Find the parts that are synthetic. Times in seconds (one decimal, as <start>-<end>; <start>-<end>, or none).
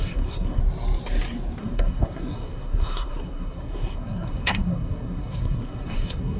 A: 0.0-0.6; 1.6-6.4